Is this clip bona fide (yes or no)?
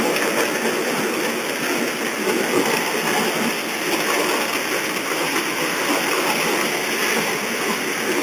yes